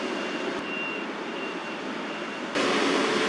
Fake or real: fake